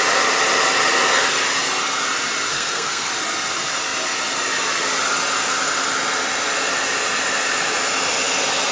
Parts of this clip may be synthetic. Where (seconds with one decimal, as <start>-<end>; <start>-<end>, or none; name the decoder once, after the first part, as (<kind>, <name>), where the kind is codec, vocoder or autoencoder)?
2.5-3.1 (codec, SNAC)